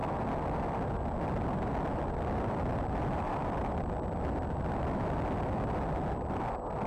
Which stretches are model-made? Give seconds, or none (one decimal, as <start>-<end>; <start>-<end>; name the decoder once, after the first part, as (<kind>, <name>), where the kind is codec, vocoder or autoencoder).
none